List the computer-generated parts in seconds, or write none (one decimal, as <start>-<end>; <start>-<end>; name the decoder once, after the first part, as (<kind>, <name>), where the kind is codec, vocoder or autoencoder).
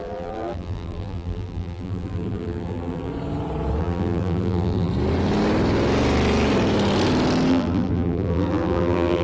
0.0-3.1 (vocoder, BigVGAN v2); 3.8-4.9; 7.5-9.2